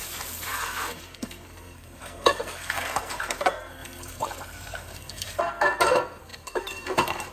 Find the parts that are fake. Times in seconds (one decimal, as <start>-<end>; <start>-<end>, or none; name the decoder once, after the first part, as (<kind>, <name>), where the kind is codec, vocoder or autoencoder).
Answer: 0.0-7.3 (codec, SNAC)